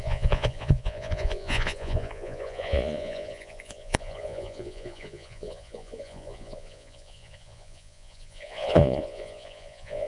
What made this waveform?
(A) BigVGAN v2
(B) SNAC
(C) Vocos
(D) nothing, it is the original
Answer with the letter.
C